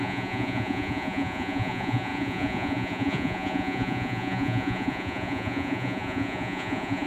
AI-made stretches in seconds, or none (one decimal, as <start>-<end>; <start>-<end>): 0.0-7.1